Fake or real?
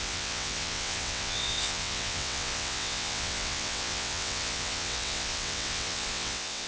fake